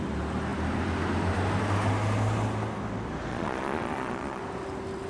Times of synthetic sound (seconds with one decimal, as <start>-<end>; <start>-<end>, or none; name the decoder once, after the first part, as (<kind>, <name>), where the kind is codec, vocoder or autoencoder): 3.3-4.4 (vocoder, Vocos)